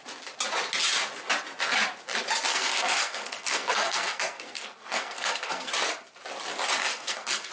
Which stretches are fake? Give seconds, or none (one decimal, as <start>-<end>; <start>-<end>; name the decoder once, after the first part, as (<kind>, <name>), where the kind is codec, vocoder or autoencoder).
2.5-5.7 (codec, SNAC); 6.8-7.5